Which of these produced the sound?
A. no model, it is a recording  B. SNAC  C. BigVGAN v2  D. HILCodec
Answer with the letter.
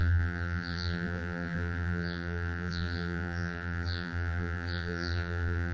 C